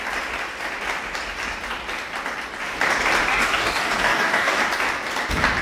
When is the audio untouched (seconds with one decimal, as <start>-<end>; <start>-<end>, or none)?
0.0-3.3; 4.6-5.6